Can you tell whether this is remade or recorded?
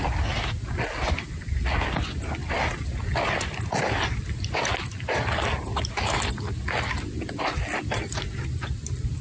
recorded